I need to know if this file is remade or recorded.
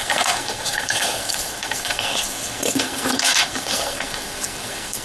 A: remade